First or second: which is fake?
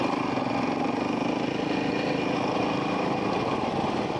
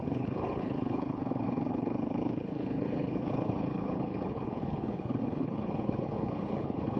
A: second